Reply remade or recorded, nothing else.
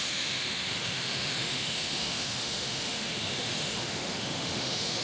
remade